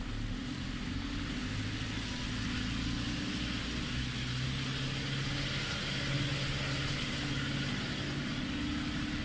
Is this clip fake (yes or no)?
no